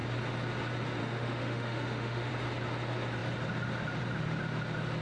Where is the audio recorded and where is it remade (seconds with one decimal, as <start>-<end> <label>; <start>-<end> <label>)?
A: 0.0-1.0 recorded; 1.0-2.3 remade; 2.3-5.0 recorded